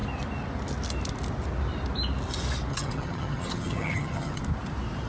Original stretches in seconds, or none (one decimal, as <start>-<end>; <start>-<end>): 0.0-2.7; 4.4-5.1